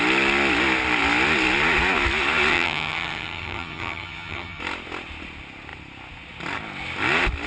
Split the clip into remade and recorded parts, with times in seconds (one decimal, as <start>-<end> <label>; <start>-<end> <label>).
0.0-2.5 recorded; 2.5-4.6 remade; 4.6-7.5 recorded